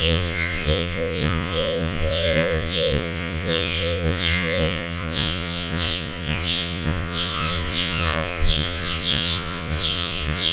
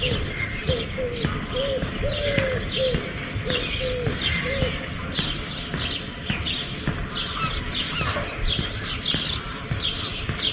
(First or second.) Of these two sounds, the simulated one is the first